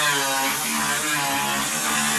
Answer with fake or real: real